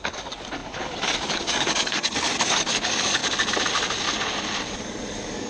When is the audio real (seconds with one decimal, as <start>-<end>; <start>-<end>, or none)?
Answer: 3.2-4.8